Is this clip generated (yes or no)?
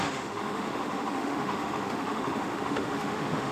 yes